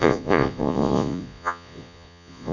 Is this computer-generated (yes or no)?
yes